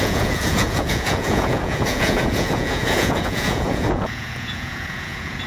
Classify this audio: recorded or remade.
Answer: remade